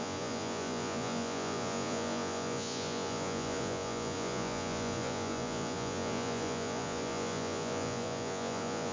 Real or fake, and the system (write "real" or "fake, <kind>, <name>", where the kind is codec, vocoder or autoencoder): fake, vocoder, Vocos